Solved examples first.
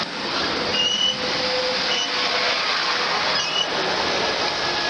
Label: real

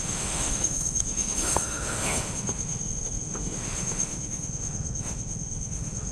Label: fake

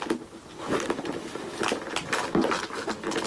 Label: real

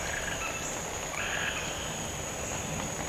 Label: real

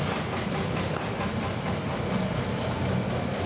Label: real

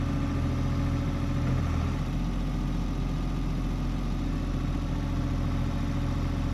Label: real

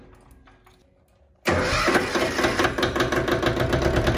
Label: real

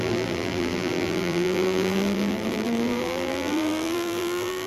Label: fake